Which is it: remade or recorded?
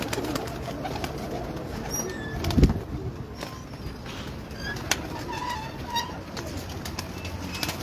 recorded